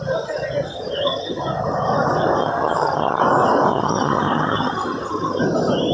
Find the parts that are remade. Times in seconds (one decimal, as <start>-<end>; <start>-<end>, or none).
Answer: 0.7-1.4; 2.4-3.2; 3.7-5.4